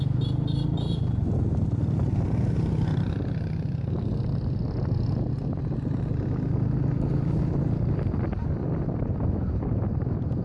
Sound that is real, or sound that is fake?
real